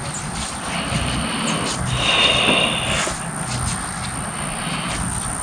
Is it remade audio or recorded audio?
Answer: recorded